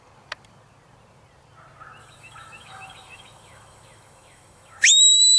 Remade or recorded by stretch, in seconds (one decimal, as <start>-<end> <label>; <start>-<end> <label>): 0.0-2.0 recorded; 2.0-5.4 remade